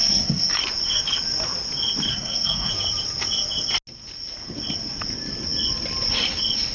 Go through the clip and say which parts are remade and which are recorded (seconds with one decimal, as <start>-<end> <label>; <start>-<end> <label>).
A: 0.0-0.5 remade; 0.5-2.1 recorded; 2.1-2.7 remade; 2.7-6.7 recorded